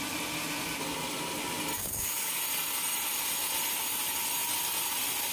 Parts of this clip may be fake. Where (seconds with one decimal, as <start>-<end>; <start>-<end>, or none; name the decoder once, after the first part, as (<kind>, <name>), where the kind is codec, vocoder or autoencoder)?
1.7-2.4 (codec, DAC)